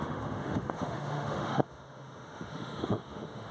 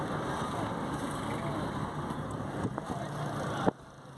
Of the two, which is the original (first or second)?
second